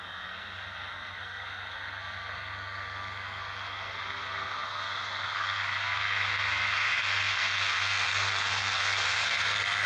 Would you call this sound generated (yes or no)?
yes